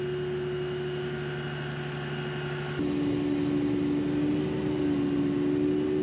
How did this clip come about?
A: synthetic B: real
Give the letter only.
B